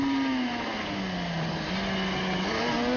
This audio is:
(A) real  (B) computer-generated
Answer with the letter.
A